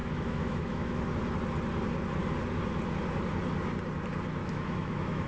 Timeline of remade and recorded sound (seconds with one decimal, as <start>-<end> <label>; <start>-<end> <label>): 0.0-1.0 remade; 1.0-4.4 recorded; 4.4-5.3 remade